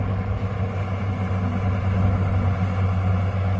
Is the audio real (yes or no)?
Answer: yes